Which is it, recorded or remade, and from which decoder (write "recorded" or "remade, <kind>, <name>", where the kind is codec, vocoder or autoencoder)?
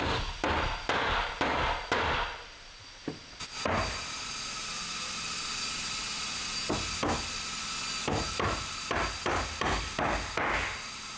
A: recorded